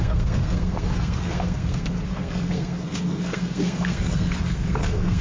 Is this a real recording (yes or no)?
no